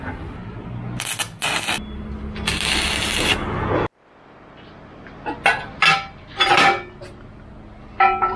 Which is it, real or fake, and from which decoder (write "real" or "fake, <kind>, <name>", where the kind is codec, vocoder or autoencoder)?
real